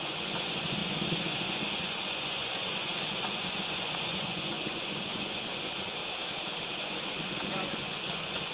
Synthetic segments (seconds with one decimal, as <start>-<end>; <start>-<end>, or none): 0.0-6.0; 6.8-8.5